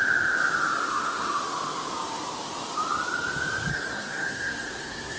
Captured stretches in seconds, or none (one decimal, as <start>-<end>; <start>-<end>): 0.0-0.8; 1.4-3.7